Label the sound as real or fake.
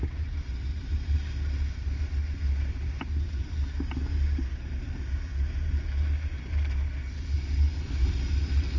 real